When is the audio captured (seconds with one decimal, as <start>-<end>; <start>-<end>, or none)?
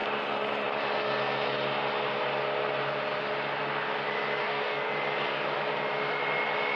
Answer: 0.0-4.4; 4.9-6.8